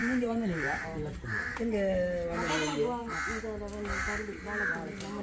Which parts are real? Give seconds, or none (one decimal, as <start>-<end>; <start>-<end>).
1.4-5.2